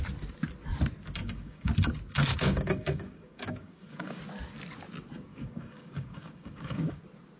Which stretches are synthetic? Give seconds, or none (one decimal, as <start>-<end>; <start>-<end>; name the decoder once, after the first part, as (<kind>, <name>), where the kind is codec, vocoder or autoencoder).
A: 1.2-1.7 (codec, DAC); 2.3-4.2; 5.3-7.0